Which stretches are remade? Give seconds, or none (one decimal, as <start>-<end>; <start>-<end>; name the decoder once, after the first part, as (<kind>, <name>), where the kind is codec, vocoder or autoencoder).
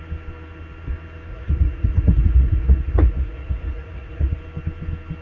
1.3-4.4 (vocoder, Vocos)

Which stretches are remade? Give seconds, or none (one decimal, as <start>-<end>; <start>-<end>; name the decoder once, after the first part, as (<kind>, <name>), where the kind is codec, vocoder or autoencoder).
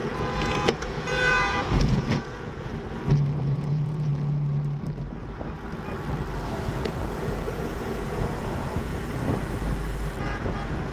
0.0-2.7 (vocoder, Vocos); 3.4-4.1; 6.7-8.9; 10.2-10.9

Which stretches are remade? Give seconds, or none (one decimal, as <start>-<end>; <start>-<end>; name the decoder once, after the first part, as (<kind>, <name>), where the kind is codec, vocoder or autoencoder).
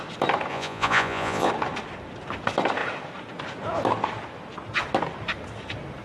0.5-1.5 (vocoder, Vocos)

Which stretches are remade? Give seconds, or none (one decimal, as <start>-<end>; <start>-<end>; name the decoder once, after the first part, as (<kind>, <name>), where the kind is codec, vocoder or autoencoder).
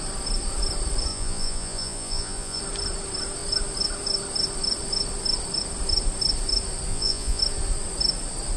1.1-2.6 (vocoder, Vocos); 6.9-7.4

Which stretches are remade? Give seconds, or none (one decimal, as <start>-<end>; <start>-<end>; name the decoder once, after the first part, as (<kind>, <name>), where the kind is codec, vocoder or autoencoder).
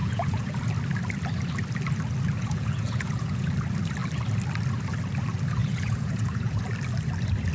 0.0-0.6 (vocoder, Vocos); 2.4-3.5; 5.6-6.6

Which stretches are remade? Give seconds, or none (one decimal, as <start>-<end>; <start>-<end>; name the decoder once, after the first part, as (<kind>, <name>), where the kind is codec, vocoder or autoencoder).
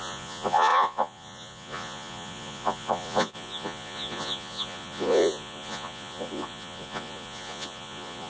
0.0-8.3 (vocoder, Vocos)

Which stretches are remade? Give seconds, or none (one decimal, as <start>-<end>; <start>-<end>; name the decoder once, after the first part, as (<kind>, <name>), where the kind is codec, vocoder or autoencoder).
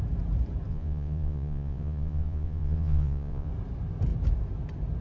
0.7-3.5 (vocoder, Vocos)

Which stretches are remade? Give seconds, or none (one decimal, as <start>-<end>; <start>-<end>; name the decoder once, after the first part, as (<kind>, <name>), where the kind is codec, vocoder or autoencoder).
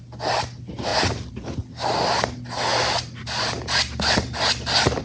none